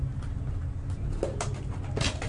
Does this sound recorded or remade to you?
recorded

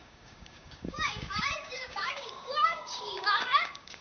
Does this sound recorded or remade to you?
remade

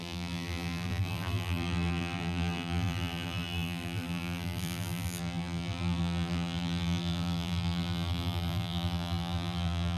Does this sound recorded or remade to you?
remade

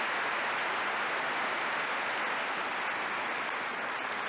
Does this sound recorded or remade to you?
recorded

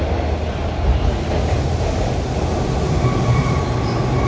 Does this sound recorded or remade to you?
recorded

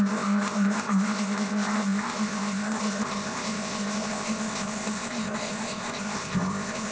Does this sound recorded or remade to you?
remade